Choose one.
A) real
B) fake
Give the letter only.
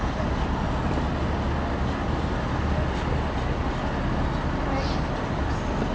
A